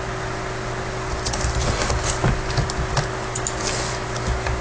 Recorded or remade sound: recorded